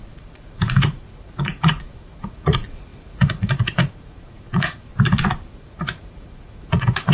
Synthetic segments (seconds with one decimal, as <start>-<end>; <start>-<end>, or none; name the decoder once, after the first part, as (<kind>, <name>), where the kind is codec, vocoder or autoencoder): 0.0-4.9 (vocoder, Vocos); 5.5-7.1